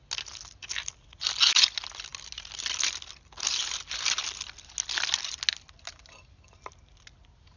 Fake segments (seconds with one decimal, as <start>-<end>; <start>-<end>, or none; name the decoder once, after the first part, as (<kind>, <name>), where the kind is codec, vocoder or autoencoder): none